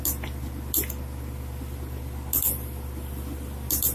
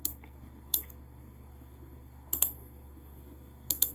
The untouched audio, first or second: first